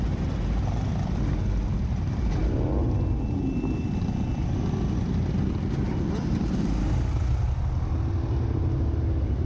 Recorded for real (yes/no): yes